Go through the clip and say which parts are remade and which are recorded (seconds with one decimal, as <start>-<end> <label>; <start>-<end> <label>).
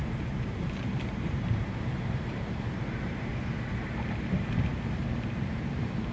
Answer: 0.0-3.3 remade; 3.3-4.3 recorded; 4.3-6.1 remade